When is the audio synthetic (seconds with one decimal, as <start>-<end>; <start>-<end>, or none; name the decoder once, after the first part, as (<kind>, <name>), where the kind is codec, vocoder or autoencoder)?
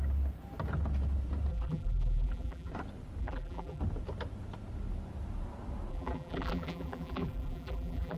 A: 1.5-2.7 (vocoder, BigVGAN v2); 3.2-3.8; 5.9-8.2